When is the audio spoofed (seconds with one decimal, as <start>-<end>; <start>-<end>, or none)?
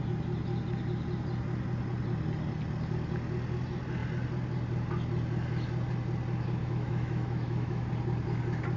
6.6-7.9